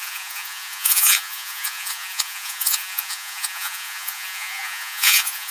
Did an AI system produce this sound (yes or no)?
yes